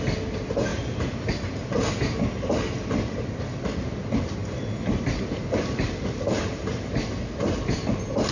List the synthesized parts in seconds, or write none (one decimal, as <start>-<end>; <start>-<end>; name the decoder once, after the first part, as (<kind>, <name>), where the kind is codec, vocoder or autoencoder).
none

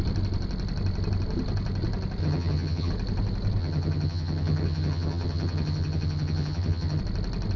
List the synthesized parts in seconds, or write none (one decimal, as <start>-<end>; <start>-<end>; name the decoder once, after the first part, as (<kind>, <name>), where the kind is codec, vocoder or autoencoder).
2.2-2.9 (vocoder, HiFi-GAN); 3.6-7.0

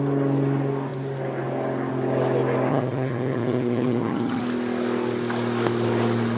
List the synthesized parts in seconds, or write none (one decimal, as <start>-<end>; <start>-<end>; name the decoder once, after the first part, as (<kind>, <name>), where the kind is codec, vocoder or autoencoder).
2.7-4.4 (vocoder, HiFi-GAN)

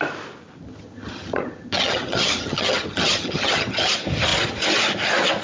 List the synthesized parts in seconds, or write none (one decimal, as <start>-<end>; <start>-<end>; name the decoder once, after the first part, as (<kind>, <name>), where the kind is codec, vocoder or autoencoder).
0.7-3.9 (vocoder, HiFi-GAN)

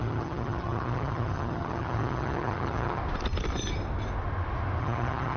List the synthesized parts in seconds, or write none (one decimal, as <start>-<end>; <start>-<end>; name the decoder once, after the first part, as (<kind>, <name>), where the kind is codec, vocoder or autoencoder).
0.0-3.0 (vocoder, HiFi-GAN); 4.8-5.4

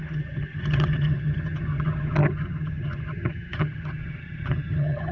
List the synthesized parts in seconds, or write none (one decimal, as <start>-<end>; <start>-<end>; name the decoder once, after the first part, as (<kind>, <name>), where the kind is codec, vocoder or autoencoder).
0.0-5.1 (vocoder, HiFi-GAN)

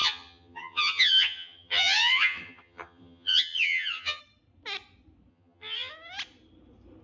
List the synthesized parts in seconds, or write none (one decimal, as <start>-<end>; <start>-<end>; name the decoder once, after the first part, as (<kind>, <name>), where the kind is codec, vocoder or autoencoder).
0.0-4.2 (vocoder, HiFi-GAN); 5.3-5.9

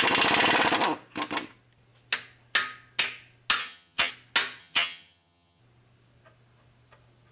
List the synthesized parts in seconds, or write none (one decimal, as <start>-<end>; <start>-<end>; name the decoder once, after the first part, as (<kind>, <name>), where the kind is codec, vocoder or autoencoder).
3.6-4.1 (vocoder, HiFi-GAN); 4.6-5.6